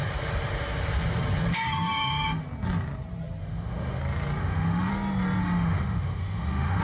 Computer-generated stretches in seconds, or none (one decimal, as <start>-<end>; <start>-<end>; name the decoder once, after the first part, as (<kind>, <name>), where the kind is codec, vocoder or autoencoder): 1.5-2.4 (autoencoder, DAC-VAE); 3.4-4.0; 4.4-4.9; 5.4-6.8